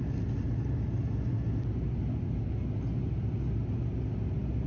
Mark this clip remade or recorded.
recorded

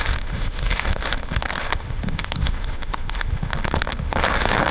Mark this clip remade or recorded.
remade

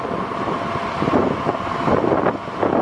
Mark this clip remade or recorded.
recorded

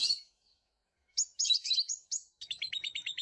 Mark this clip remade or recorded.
remade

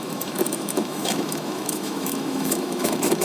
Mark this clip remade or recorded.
remade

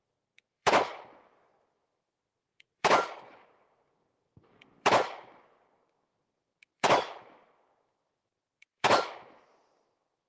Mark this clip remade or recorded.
remade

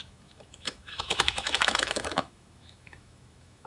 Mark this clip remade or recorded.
remade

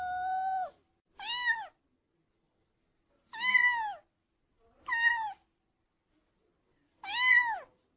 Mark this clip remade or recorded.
recorded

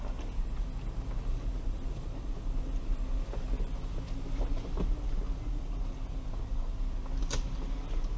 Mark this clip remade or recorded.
recorded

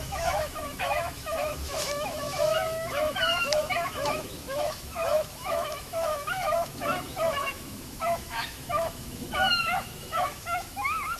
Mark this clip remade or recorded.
remade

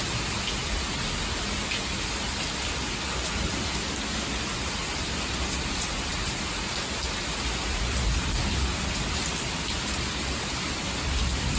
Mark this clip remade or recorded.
recorded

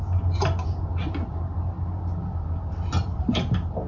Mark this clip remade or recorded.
recorded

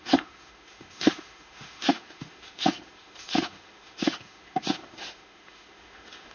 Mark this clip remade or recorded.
remade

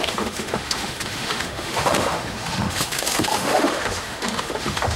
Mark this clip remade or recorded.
remade